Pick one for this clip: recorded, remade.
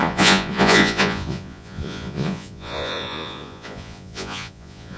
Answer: remade